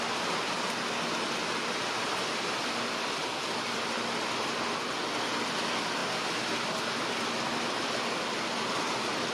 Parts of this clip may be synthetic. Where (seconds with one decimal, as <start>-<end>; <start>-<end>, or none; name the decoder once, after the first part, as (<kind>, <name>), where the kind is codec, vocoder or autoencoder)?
none

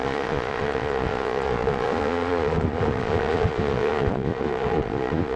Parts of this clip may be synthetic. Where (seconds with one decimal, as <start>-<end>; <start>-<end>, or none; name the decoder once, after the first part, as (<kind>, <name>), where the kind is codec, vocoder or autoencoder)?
0.0-5.4 (vocoder, Vocos)

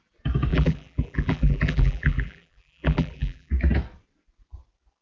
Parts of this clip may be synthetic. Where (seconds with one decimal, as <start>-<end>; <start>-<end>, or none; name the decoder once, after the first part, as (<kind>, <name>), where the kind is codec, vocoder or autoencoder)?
0.5-3.5 (vocoder, BigVGAN v2)

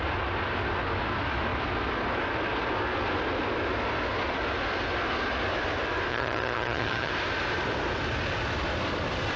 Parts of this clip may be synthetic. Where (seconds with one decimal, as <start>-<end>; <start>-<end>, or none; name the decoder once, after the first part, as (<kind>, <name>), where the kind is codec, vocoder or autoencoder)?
6.1-7.1 (vocoder, HiFi-GAN)